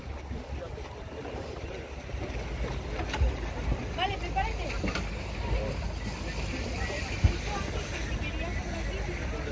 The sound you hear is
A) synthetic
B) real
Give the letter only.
B